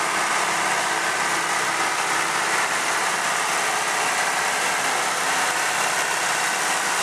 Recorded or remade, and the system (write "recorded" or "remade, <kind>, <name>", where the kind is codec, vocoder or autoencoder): recorded